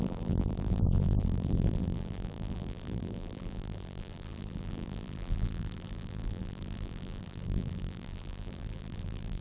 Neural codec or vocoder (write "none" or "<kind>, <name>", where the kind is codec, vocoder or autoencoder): vocoder, BigVGAN v2